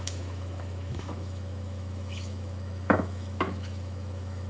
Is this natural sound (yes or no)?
no